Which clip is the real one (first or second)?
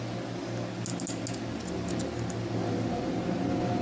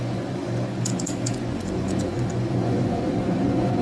first